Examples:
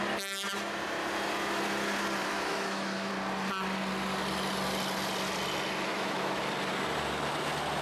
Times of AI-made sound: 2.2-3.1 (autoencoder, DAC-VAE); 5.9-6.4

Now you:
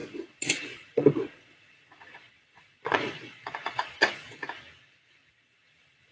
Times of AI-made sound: 0.0-4.4 (vocoder, Vocos); 5.3-6.1

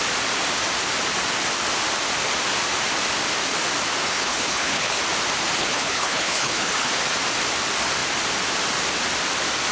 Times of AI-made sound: 4.0-5.0 (codec, HILCodec); 5.6-6.9

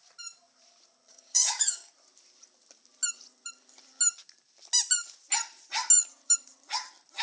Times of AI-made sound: 1.1-1.9 (codec, DAC)

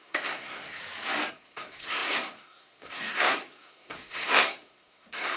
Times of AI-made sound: 0.0-0.8 (codec, SNAC); 1.3-5.4